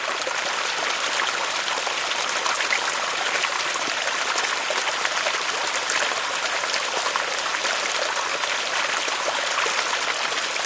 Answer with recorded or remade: recorded